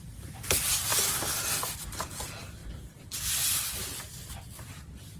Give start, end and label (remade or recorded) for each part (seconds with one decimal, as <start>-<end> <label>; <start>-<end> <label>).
0.0-0.9 remade; 0.9-1.5 recorded; 1.5-2.6 remade; 2.6-4.0 recorded; 4.0-5.2 remade